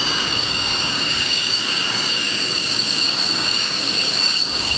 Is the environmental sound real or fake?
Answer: fake